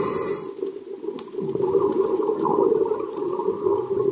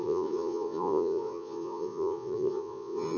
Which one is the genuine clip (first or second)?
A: first